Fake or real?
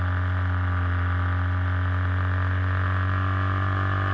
real